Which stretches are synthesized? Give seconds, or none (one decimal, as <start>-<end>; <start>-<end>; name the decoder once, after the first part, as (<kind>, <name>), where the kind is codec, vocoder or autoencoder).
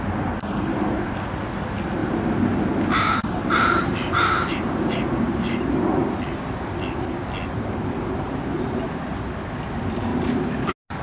3.2-6.0 (vocoder, BigVGAN v2); 10.1-10.6